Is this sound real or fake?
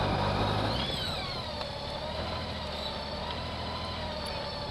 real